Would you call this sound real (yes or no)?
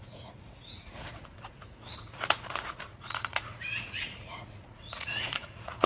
no